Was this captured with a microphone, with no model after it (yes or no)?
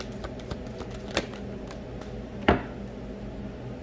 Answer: yes